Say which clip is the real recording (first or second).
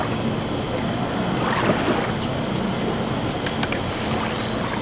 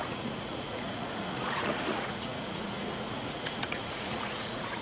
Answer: first